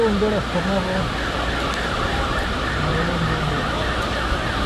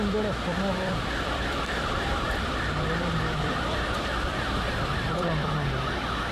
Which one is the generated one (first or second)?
second